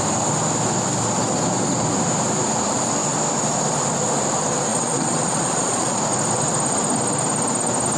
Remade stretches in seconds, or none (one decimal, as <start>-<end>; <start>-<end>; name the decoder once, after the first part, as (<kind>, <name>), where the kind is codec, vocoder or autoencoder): 4.7-6.0 (vocoder, Vocos)